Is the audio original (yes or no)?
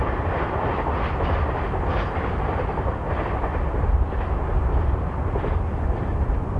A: yes